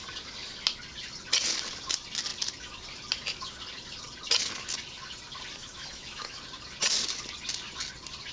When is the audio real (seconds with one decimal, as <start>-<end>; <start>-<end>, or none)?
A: 0.0-5.6; 6.4-8.3